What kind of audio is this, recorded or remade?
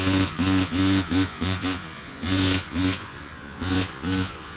remade